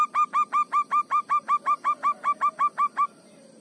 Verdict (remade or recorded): remade